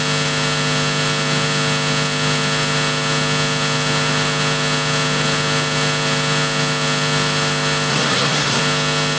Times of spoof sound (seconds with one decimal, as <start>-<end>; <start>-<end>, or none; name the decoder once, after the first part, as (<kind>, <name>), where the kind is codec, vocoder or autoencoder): 7.9-8.6 (codec, SNAC)